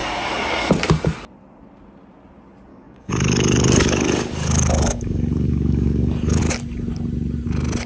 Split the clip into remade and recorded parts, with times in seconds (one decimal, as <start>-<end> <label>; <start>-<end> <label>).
0.0-0.7 remade; 0.7-2.7 recorded; 2.7-6.4 remade; 6.4-7.9 recorded

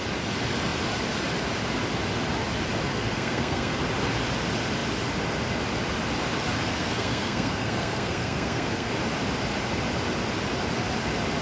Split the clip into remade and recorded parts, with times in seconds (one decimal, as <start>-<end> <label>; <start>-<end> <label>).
0.0-2.9 recorded; 2.9-3.8 remade; 3.8-6.8 recorded; 6.8-8.9 remade; 8.9-11.4 recorded

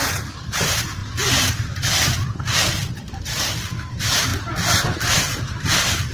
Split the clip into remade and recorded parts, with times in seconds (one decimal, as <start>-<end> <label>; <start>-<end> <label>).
0.0-4.3 remade; 4.3-4.8 recorded; 4.8-6.1 remade

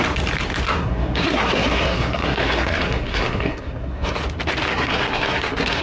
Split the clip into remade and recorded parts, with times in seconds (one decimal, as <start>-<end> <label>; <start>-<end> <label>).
0.0-0.7 recorded; 0.7-4.2 remade; 4.2-4.7 recorded; 4.7-5.8 remade

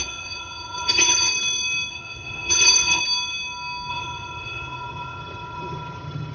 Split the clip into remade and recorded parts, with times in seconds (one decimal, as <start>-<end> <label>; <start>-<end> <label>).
0.0-1.3 remade; 1.3-1.9 recorded; 1.9-3.0 remade; 3.0-3.9 recorded; 3.9-6.3 remade